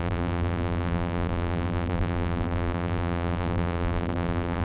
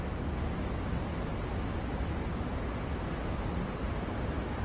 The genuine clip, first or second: second